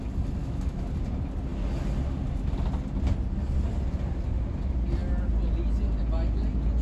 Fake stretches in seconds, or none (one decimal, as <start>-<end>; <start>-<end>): 0.4-0.9